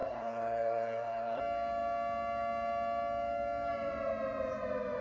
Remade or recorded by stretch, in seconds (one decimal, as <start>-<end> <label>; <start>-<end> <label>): 0.0-1.4 remade; 1.4-5.0 recorded